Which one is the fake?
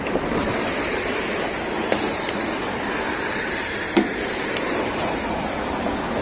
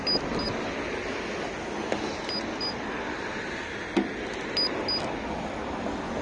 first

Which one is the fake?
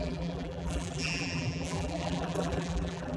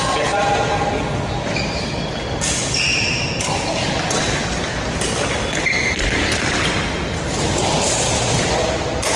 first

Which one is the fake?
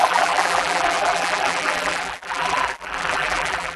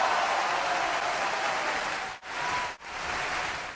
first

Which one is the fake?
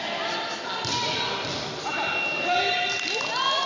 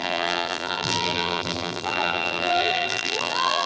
second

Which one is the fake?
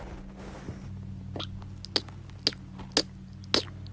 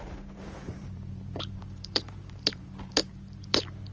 second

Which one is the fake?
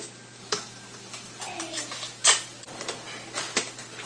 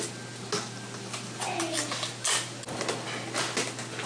first